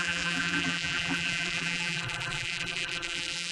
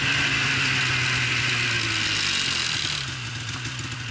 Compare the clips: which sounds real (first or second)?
second